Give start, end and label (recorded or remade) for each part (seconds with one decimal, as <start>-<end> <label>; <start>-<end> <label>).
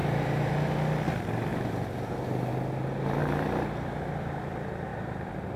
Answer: 0.0-0.5 remade; 0.5-1.5 recorded; 1.5-2.5 remade; 2.5-3.2 recorded; 3.2-3.7 remade; 3.7-4.9 recorded; 4.9-5.6 remade